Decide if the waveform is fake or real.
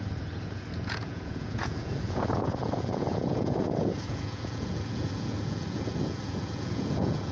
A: fake